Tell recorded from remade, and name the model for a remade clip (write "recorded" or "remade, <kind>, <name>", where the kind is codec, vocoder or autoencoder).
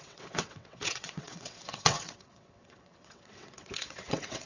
remade, vocoder, WaveNeXt